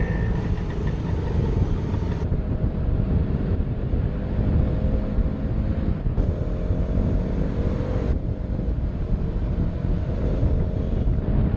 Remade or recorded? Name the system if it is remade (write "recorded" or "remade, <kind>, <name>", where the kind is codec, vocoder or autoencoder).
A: recorded